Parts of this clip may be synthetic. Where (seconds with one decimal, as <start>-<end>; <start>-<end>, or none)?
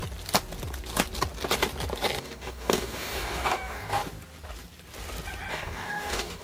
2.2-4.0; 5.5-6.4